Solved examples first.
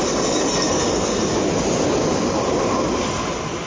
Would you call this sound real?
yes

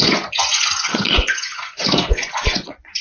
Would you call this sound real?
no